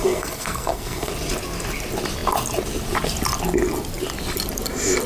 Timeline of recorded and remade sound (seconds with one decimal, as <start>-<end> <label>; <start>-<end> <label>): 0.0-1.1 remade; 1.1-5.1 recorded